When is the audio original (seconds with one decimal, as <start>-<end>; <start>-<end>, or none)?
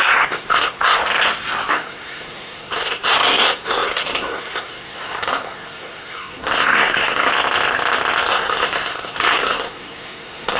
1.0-1.7; 7.3-8.3